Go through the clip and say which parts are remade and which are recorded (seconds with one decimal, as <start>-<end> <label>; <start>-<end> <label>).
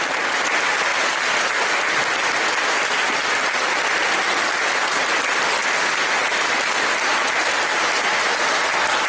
0.0-9.1 recorded